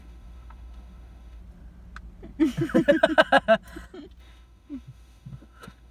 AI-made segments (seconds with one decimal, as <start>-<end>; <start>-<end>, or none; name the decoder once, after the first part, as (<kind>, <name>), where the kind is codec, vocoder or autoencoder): 0.0-1.4 (autoencoder, DAC-VAE); 4.2-5.9